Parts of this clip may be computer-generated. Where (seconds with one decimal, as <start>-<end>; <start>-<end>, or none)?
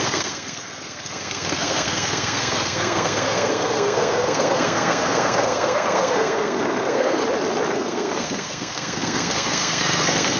0.0-7.2; 7.7-10.4